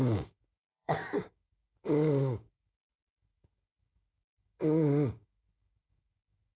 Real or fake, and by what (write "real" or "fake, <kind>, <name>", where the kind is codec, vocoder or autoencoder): fake, codec, DAC